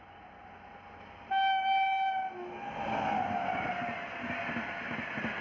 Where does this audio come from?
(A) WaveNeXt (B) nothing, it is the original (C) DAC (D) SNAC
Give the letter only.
B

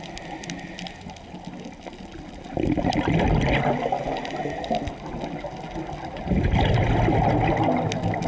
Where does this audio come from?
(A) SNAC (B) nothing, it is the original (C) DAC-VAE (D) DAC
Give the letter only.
B